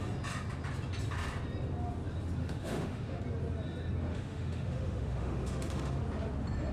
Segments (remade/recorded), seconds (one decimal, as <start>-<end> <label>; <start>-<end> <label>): 0.0-2.4 recorded; 2.4-3.2 remade; 3.2-4.1 recorded; 4.1-6.0 remade; 6.0-6.7 recorded